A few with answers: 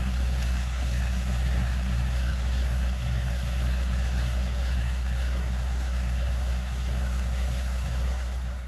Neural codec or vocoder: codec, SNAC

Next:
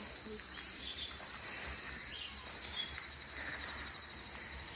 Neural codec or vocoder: none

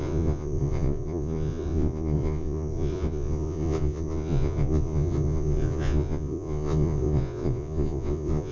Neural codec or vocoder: vocoder, Vocos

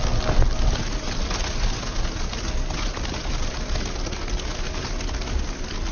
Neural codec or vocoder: none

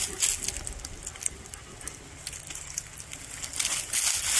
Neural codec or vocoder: none